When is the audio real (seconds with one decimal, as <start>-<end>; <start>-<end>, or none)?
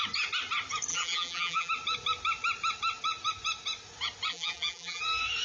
0.0-0.9; 1.7-4.3; 5.0-5.4